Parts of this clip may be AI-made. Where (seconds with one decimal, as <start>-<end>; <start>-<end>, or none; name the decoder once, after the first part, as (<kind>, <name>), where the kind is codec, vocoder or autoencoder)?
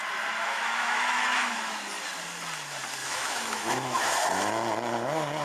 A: 0.4-1.8 (autoencoder, DAC-VAE); 3.0-4.1